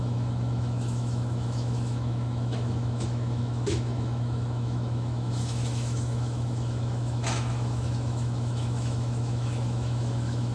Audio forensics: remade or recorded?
remade